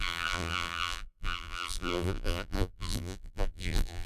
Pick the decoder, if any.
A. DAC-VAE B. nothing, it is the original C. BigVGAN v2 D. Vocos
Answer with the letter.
C